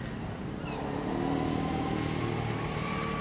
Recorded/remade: recorded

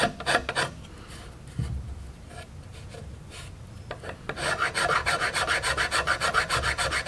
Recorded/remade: recorded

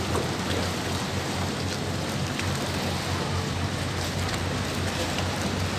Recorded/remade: recorded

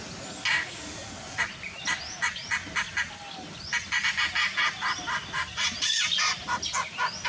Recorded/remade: recorded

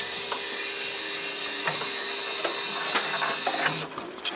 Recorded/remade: recorded